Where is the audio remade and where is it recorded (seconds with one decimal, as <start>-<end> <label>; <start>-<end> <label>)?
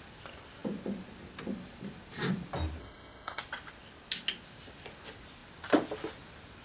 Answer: 0.0-2.8 recorded; 2.8-3.4 remade; 3.4-6.6 recorded